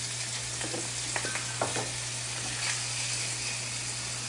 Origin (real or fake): real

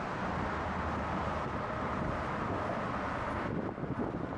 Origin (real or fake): real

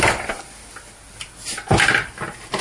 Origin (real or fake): real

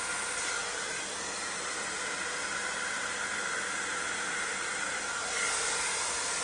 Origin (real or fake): real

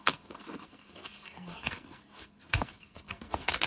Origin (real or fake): fake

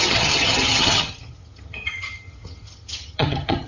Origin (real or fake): fake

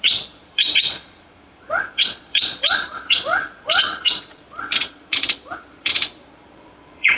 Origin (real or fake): fake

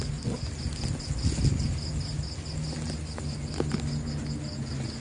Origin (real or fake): real